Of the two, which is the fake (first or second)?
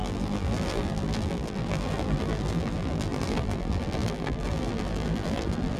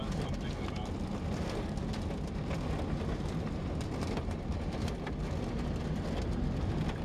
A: first